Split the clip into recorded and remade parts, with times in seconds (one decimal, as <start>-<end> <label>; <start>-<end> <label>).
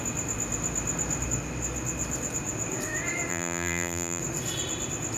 0.0-3.3 recorded; 3.3-4.2 remade; 4.2-5.2 recorded